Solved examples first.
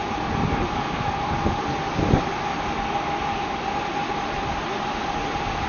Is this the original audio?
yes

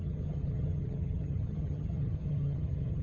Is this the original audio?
no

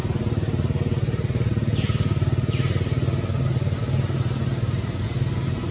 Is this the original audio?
yes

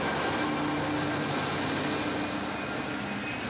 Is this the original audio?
yes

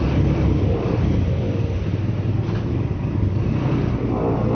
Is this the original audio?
yes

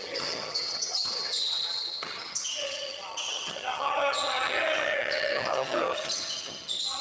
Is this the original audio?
no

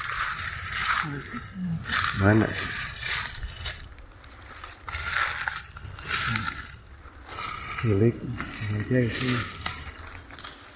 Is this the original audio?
yes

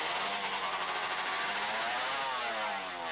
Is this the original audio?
yes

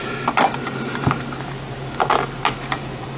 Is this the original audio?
yes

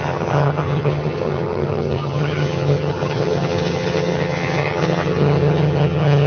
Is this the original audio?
no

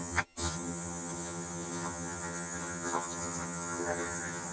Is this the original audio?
no